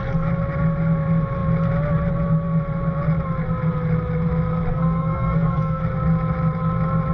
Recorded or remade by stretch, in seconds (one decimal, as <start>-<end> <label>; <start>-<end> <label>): 0.0-4.7 recorded; 4.7-5.8 remade; 5.8-7.1 recorded